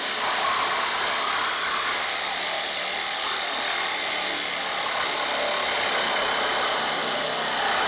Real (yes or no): yes